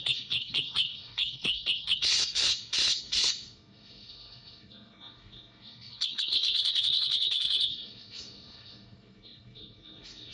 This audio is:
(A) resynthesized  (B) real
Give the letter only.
A